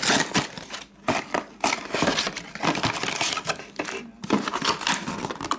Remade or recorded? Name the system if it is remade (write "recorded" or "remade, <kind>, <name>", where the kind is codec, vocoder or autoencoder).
recorded